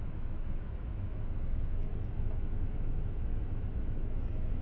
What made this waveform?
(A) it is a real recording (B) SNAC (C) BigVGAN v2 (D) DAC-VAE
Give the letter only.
D